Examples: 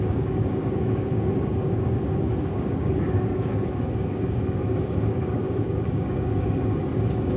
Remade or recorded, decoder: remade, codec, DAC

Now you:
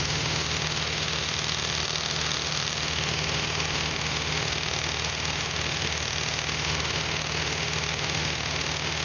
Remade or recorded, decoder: remade, autoencoder, DAC-VAE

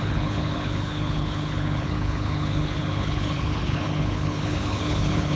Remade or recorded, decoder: remade, codec, HILCodec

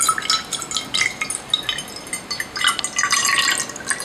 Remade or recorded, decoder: recorded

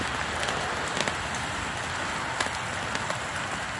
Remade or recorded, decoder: recorded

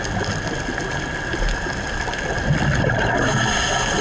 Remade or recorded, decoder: recorded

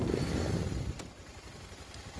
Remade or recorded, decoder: recorded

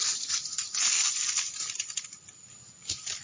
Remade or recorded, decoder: remade, vocoder, BigVGAN v2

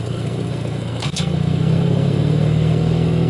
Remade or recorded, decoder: remade, codec, SNAC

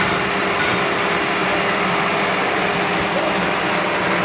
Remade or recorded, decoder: recorded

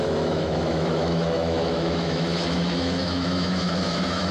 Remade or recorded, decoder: remade, autoencoder, DAC-VAE